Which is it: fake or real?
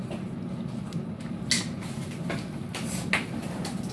real